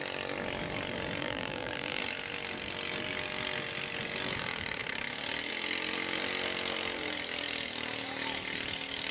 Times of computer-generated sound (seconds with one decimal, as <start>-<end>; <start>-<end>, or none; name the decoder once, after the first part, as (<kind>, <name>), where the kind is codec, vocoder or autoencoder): 1.2-2.0 (vocoder, BigVGAN v2)